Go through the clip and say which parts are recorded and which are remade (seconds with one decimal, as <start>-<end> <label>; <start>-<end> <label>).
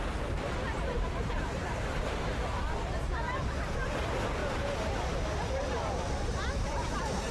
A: 0.0-7.3 recorded